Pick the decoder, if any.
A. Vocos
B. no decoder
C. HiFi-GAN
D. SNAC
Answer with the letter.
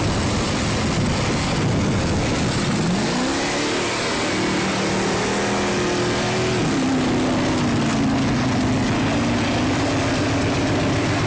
B